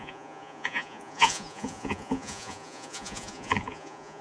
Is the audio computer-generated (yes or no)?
yes